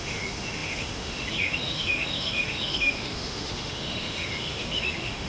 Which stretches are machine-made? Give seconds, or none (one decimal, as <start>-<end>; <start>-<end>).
0.0-5.3